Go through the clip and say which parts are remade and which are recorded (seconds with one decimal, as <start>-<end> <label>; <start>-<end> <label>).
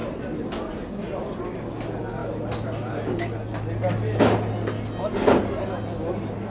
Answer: 0.0-6.5 recorded